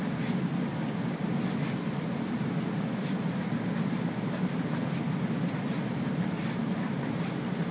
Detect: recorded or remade recorded